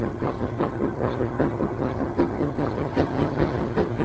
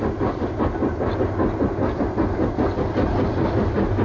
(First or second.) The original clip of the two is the second